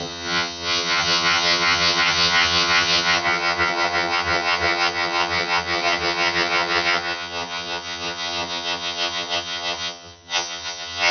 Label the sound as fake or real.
fake